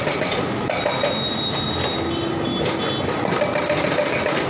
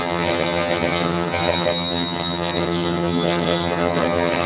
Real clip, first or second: first